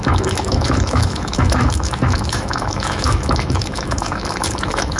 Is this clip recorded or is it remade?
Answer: remade